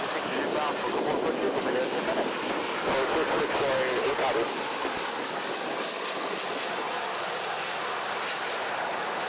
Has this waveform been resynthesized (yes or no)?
no